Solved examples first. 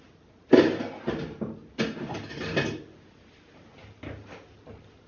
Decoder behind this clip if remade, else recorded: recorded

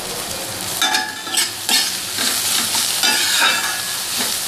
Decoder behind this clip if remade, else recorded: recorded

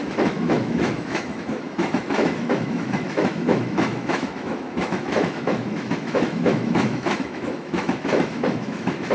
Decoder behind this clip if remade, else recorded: remade, autoencoder, DAC-VAE